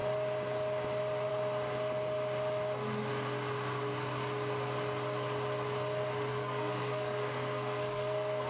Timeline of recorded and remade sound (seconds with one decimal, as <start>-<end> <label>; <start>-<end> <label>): 0.0-6.3 recorded; 6.3-8.5 remade